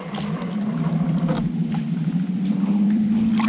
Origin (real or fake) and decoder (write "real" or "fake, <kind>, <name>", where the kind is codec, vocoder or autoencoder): fake, vocoder, BigVGAN v2